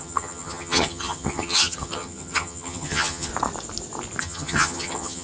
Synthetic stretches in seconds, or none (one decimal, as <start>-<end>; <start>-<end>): 0.0-3.3; 4.2-5.2